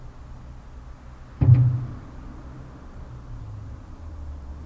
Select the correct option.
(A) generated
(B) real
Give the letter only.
B